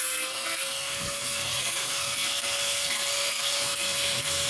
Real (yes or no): no